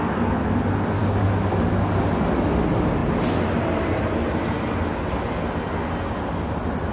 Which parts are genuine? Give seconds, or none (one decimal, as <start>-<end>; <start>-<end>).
0.0-6.9